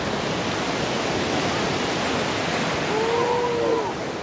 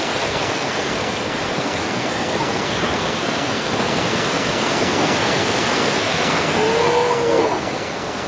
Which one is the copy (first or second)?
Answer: second